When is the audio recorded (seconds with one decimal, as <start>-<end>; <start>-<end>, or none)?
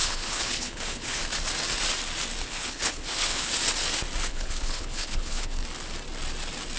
1.2-2.5; 3.5-4.3; 5.6-6.8